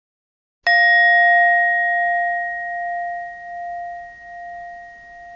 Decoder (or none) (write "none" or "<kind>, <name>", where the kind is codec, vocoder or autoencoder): none